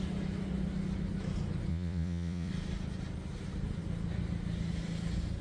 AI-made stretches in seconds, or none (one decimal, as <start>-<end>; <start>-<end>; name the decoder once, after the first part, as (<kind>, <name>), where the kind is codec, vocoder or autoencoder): 1.7-2.5 (vocoder, Vocos)

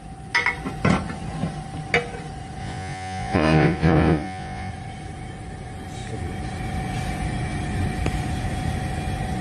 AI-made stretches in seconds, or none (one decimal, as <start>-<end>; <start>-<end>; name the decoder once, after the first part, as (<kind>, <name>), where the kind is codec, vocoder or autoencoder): 2.6-4.7 (vocoder, Vocos)

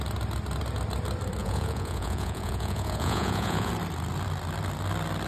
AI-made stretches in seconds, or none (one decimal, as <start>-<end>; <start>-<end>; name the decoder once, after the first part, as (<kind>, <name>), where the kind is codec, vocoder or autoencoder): 1.4-3.7 (vocoder, Vocos)

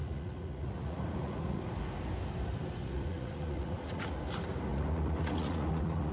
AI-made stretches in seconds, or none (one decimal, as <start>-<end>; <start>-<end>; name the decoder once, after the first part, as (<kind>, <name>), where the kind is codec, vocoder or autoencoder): 0.0-1.6 (vocoder, Vocos); 2.8-4.2; 4.7-6.1

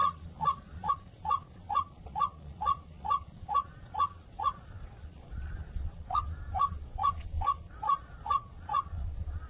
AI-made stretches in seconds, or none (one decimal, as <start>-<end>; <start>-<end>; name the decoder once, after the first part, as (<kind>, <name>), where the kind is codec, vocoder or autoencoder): 0.0-9.5 (vocoder, Vocos)